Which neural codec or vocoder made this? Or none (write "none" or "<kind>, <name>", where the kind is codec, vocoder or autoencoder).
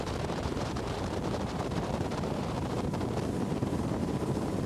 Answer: vocoder, BigVGAN v2